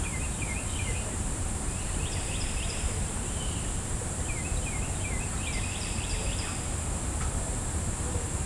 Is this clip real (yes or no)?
no